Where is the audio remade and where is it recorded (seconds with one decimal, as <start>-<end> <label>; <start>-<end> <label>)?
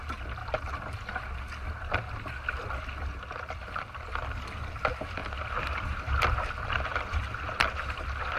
0.0-0.4 remade; 0.4-2.1 recorded; 2.1-3.1 remade; 3.1-3.6 recorded; 3.6-5.2 remade; 5.2-6.7 recorded; 6.7-8.4 remade